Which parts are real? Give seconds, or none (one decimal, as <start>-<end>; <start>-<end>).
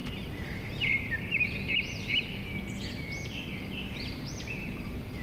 2.4-4.5